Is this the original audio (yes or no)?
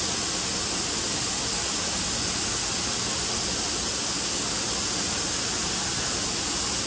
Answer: yes